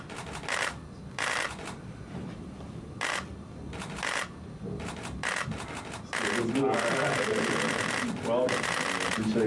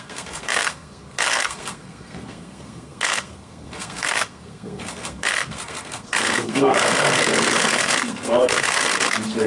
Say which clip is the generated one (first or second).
second